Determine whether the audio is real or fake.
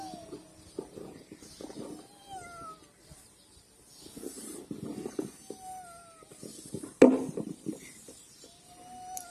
real